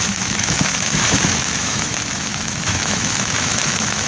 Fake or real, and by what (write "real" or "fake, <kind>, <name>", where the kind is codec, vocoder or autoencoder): fake, autoencoder, DAC-VAE